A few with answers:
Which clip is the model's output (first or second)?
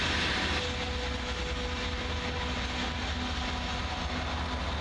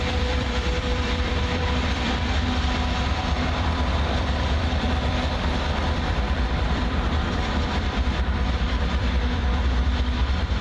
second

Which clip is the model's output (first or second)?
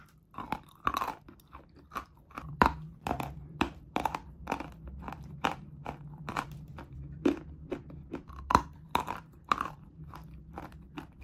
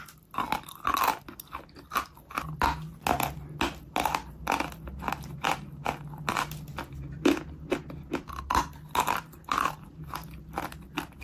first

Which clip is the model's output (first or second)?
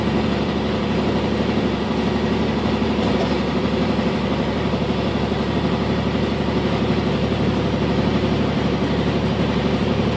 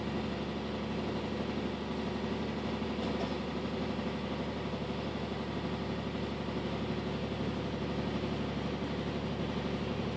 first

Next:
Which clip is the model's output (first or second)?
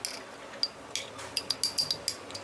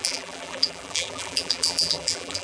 second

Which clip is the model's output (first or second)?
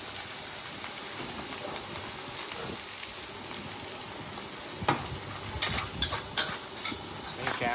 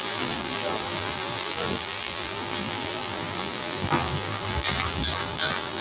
second